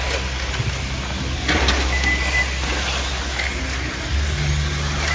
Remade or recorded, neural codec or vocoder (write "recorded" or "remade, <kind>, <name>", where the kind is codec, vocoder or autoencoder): recorded